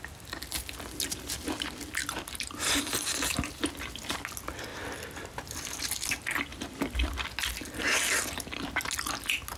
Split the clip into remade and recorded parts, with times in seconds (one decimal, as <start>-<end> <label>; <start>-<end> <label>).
0.0-2.0 recorded; 2.0-3.6 remade; 3.6-4.7 recorded; 4.7-5.8 remade; 5.8-6.5 recorded; 6.5-7.1 remade; 7.1-9.6 recorded

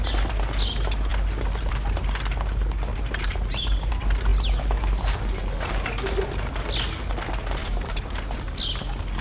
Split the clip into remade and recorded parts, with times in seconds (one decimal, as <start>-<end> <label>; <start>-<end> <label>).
0.0-2.9 recorded; 2.9-3.9 remade; 3.9-7.6 recorded; 7.6-8.4 remade; 8.4-9.2 recorded